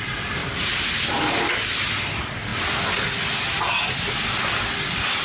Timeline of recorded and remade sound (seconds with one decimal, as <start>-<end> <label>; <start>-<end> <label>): 0.0-5.2 recorded